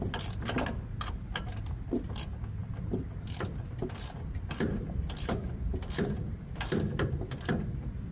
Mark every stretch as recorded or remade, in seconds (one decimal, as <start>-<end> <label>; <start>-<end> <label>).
0.0-8.1 recorded